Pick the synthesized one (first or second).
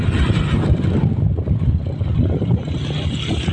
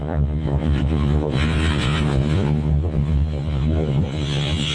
second